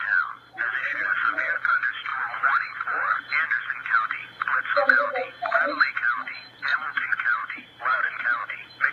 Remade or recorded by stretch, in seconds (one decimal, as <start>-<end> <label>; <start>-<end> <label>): 0.0-2.1 recorded; 2.1-3.2 remade; 3.2-6.7 recorded; 6.7-8.2 remade; 8.2-8.9 recorded